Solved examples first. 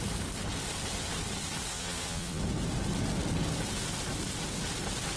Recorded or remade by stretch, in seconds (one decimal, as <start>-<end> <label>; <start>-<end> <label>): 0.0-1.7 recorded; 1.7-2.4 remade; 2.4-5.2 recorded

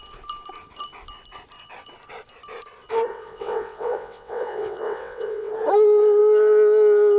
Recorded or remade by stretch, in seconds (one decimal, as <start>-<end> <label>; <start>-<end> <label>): 0.0-3.1 recorded; 3.1-5.5 remade; 5.5-7.2 recorded

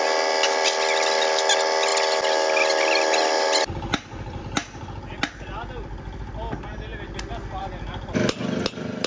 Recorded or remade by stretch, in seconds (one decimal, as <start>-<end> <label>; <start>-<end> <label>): 0.0-9.1 recorded